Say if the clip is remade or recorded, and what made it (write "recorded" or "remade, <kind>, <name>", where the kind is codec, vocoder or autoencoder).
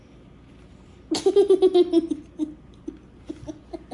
recorded